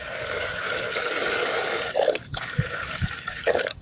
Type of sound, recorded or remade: remade